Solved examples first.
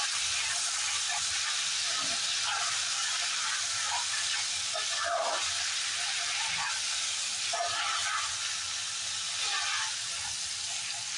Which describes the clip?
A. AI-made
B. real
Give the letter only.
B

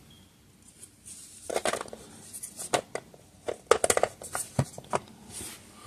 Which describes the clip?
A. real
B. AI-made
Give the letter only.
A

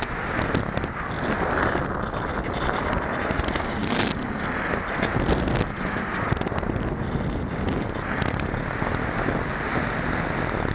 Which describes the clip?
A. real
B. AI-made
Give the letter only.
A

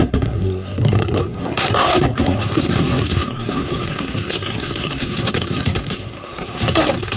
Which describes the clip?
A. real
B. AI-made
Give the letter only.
B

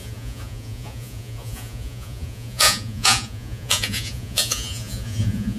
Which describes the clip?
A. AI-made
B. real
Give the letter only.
A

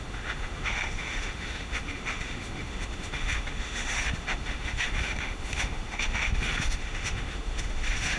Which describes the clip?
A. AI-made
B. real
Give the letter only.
A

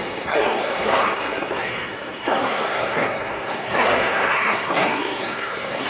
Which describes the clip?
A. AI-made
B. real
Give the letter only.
A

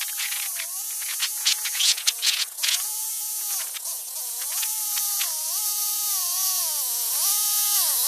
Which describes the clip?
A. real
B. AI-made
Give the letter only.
B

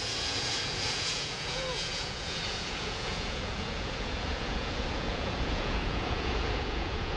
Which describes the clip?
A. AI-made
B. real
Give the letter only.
A